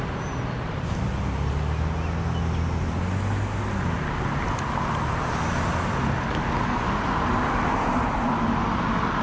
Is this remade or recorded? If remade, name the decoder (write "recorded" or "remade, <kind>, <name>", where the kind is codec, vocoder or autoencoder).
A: recorded